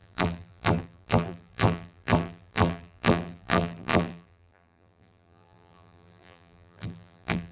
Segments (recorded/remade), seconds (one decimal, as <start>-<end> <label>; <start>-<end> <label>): 0.0-7.5 remade